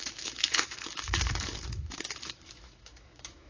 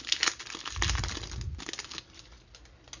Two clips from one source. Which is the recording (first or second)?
second